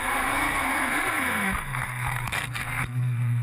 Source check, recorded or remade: remade